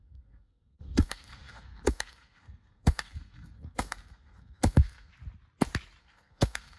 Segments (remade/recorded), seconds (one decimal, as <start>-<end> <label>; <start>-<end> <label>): 0.0-5.1 remade; 5.1-6.0 recorded; 6.0-6.8 remade